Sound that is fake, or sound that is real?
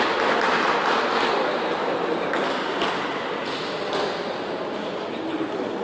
real